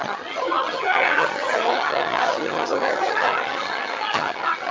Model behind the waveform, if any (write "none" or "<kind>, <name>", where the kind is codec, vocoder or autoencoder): vocoder, HiFi-GAN